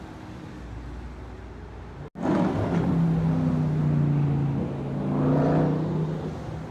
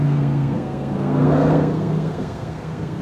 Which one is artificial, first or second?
second